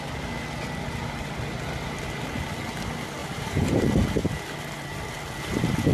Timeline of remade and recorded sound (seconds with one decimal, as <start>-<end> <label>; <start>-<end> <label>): 0.0-3.2 recorded; 3.2-3.7 remade; 3.7-5.9 recorded